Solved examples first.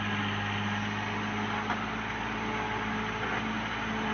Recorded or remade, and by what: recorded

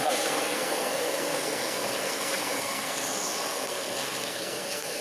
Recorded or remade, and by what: remade, codec, SNAC